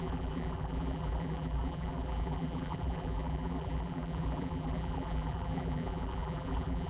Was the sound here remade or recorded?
remade